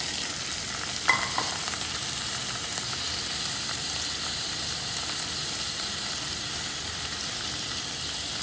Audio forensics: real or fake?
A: real